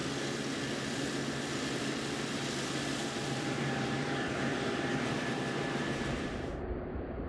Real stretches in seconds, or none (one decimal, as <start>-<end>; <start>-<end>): 0.0-3.2; 4.5-5.0